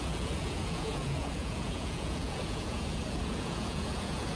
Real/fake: fake